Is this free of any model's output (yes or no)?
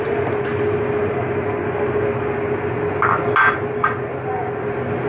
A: yes